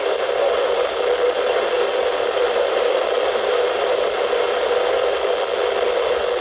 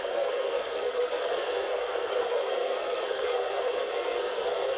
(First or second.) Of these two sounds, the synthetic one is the second